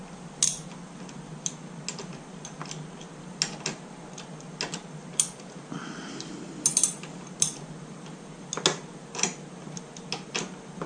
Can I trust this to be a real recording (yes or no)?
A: yes